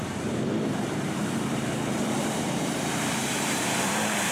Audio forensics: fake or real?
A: fake